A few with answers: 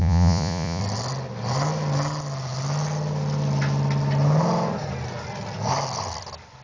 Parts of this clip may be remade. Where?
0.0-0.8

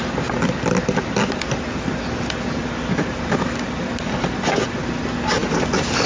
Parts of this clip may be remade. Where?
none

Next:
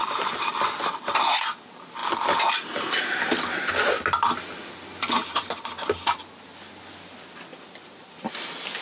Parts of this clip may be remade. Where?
0.0-0.5; 5.2-5.7; 7.5-8.3